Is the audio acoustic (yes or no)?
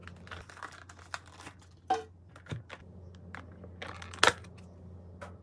yes